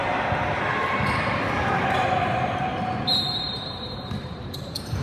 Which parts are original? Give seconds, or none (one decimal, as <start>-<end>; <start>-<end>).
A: 0.0-3.0